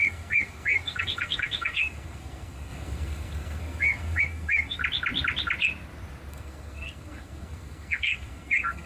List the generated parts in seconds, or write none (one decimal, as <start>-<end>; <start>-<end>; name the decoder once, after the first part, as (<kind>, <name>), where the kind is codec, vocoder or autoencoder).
0.0-4.8 (codec, SNAC); 6.3-8.9